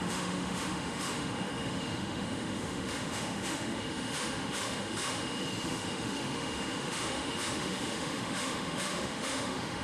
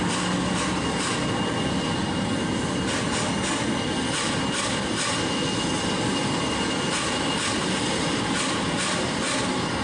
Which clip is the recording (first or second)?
second